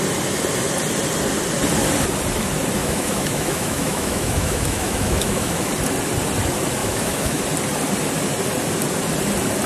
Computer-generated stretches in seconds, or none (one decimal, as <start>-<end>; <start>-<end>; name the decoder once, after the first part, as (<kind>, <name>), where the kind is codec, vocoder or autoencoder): 2.8-5.7 (autoencoder, DAC-VAE); 6.8-7.4